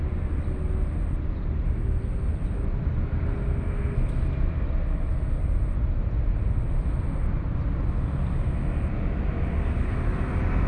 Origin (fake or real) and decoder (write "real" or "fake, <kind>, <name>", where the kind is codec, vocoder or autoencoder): real